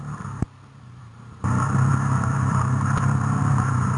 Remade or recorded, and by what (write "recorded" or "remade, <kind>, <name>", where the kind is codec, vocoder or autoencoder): remade, vocoder, BigVGAN v2